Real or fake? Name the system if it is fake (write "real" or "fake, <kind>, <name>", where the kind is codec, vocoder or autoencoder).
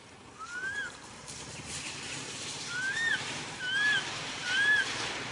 real